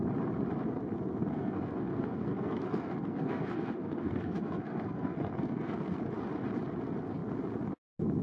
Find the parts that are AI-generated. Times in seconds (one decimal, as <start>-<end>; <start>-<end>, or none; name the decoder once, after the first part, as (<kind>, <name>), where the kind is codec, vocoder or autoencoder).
1.3-6.0 (codec, SNAC)